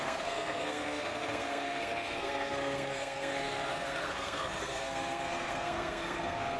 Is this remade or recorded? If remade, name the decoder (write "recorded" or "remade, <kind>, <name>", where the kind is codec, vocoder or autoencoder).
remade, codec, SNAC